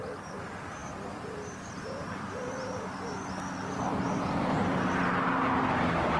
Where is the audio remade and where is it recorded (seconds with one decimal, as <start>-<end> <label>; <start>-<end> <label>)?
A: 0.0-6.2 recorded